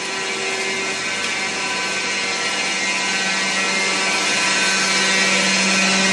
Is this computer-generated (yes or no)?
no